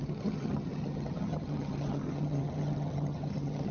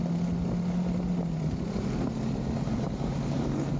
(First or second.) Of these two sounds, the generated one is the first